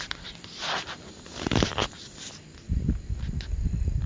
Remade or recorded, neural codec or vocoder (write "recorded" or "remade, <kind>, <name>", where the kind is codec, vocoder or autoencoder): recorded